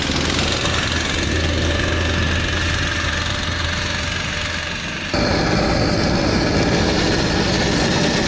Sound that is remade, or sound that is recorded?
recorded